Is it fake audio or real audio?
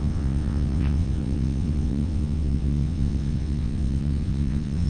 fake